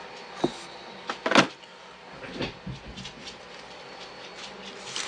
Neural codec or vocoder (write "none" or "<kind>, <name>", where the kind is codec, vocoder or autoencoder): none